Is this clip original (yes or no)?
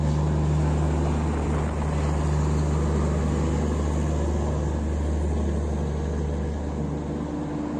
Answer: yes